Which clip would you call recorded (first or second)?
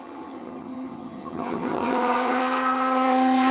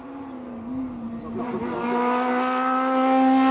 second